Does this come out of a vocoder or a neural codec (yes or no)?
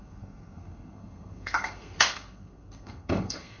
yes